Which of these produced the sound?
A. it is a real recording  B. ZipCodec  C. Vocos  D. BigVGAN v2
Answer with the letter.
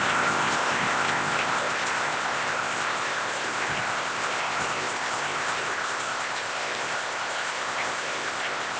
B